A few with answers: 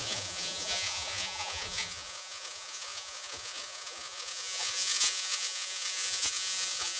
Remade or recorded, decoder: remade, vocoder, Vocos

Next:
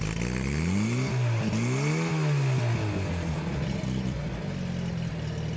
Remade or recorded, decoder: recorded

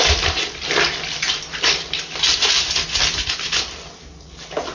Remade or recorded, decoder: recorded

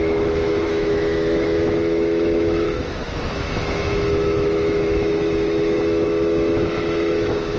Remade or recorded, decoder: remade, autoencoder, DAC-VAE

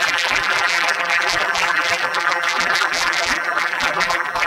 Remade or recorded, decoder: remade, vocoder, BigVGAN v2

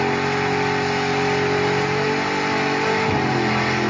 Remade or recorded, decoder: recorded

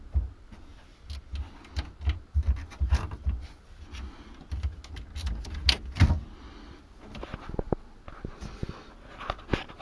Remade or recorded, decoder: recorded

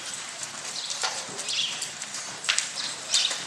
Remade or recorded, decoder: remade, vocoder, BigVGAN v2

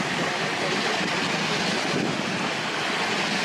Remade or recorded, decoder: recorded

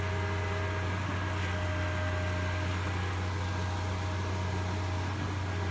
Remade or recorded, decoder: recorded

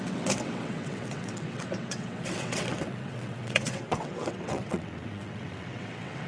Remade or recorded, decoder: remade, vocoder, WaveNeXt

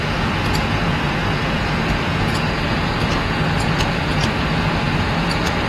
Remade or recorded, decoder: remade, vocoder, Vocos